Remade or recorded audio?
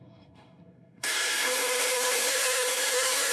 remade